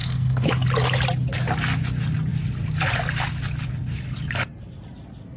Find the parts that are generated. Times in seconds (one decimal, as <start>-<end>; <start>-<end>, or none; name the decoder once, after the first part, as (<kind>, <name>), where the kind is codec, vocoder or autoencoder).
0.0-0.5 (codec, SNAC)